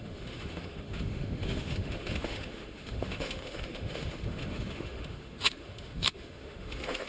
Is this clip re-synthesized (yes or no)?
yes